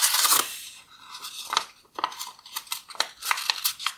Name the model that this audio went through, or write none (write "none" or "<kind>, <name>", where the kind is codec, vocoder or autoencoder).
none